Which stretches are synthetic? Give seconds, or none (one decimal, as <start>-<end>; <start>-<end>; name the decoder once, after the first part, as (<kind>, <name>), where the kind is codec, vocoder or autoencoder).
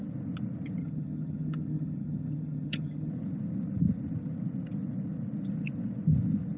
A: 0.8-3.1 (vocoder, HiFi-GAN)